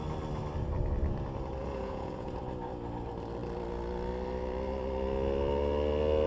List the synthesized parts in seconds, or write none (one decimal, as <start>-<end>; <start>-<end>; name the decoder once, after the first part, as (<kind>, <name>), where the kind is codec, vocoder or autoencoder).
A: 1.6-2.4 (vocoder, Vocos)